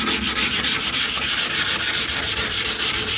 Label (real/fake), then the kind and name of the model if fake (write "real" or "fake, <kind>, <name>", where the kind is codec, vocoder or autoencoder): fake, vocoder, BigVGAN v2